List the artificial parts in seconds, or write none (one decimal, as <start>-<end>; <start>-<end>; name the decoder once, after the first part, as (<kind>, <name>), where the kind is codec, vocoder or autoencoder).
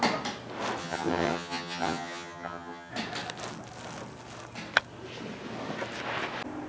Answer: 0.8-2.9 (vocoder, HiFi-GAN)